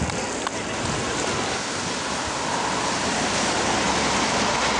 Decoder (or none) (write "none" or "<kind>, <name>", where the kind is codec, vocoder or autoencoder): none